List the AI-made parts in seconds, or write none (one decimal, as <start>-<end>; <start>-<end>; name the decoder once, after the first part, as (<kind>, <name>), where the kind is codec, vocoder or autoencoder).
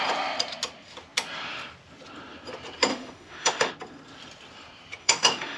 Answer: 2.9-3.7 (autoencoder, DAC-VAE); 5.0-5.6